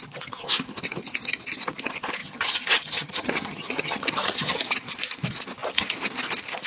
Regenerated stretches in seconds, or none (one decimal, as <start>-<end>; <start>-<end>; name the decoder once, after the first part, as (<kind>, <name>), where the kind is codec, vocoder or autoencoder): 2.2-4.6 (vocoder, HiFi-GAN)